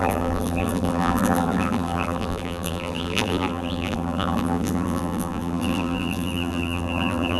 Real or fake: fake